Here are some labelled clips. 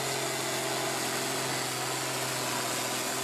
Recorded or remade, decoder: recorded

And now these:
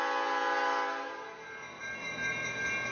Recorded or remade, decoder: recorded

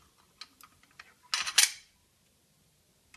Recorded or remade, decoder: recorded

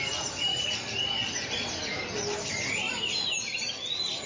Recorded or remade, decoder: remade, vocoder, BigVGAN v2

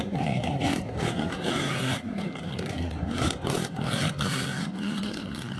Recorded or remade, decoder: remade, codec, SNAC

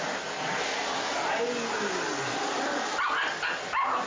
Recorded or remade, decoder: recorded